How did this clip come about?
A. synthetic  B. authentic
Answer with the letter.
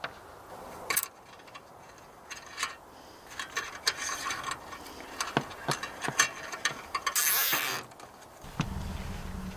B